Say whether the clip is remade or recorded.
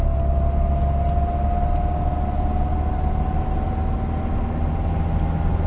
recorded